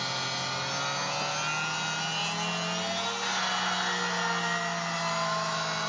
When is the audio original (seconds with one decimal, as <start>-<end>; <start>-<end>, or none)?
0.0-5.9